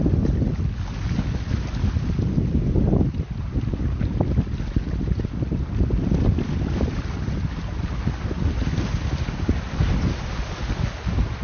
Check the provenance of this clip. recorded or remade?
recorded